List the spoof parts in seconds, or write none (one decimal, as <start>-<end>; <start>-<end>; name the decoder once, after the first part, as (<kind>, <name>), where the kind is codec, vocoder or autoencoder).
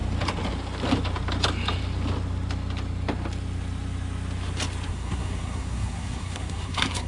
4.9-7.1 (codec, SNAC)